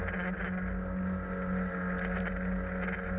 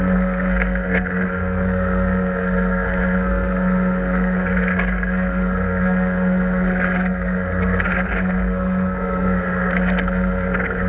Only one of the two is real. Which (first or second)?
first